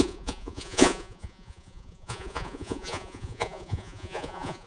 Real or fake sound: fake